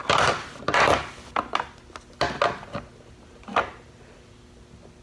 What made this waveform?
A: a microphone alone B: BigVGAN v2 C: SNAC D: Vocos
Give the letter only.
A